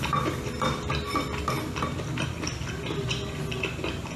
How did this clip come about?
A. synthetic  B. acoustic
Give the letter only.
B